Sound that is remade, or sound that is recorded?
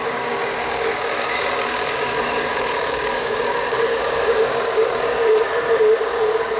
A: remade